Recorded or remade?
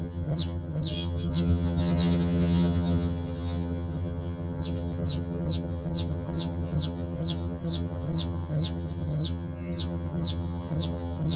remade